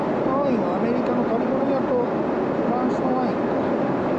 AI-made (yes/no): no